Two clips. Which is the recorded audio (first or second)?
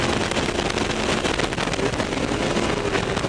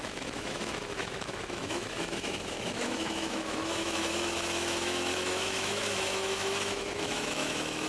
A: first